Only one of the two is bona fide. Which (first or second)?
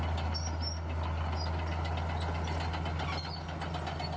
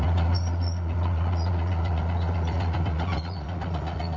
first